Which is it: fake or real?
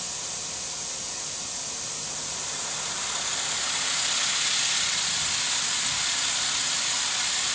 real